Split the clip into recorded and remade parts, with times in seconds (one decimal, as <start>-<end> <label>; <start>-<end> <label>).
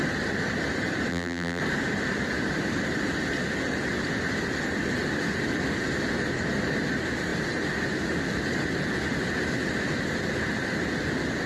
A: 0.0-1.1 recorded; 1.1-1.6 remade; 1.6-11.5 recorded